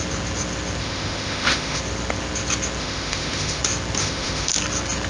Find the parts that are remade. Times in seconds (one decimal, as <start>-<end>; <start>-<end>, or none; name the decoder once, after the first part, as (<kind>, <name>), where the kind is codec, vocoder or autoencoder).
0.8-1.8 (autoencoder, DAC-VAE); 2.8-3.6; 4.0-4.5